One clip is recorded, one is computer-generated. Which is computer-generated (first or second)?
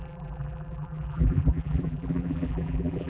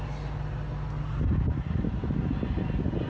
first